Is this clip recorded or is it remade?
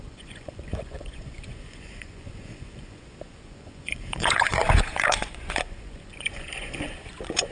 remade